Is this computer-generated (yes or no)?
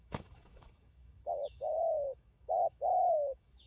yes